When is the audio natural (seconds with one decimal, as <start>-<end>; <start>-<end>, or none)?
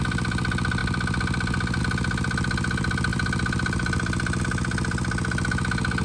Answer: 0.0-6.0